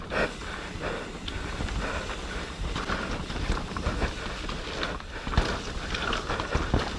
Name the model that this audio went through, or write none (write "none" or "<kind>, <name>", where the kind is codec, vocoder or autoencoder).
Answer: none